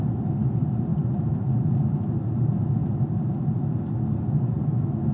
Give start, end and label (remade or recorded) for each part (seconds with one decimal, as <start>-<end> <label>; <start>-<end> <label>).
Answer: 0.0-0.9 recorded; 0.9-2.0 remade; 2.0-5.1 recorded